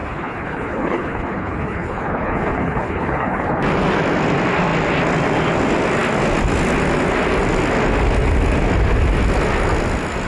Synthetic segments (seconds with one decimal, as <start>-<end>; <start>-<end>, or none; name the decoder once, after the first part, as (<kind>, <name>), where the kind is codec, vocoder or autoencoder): 0.0-3.6 (codec, HILCodec)

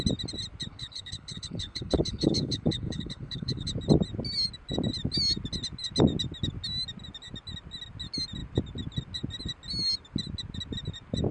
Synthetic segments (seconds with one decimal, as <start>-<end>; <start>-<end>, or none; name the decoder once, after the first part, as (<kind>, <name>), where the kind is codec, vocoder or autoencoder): 0.7-3.7 (codec, HILCodec)

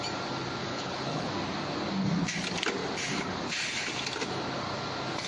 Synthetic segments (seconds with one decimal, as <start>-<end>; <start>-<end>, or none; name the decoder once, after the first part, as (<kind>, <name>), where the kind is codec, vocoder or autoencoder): 0.6-1.3 (codec, HILCodec)